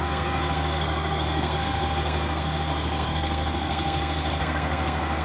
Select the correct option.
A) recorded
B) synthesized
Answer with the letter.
B